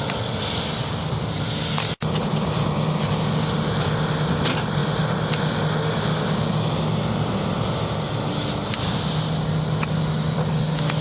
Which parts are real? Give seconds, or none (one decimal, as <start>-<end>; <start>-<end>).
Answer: 0.0-11.0